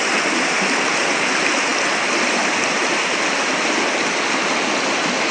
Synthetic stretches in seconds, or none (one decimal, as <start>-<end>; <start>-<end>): none